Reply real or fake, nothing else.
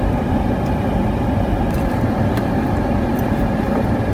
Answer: real